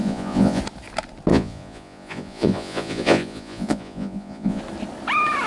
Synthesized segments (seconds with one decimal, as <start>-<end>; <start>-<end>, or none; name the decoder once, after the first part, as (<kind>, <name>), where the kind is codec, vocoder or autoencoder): 0.0-0.6 (vocoder, Vocos); 1.3-4.6